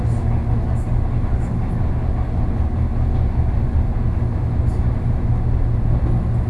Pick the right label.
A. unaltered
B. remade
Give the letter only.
A